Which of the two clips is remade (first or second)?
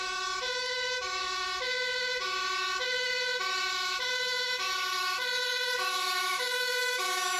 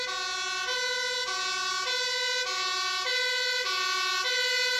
first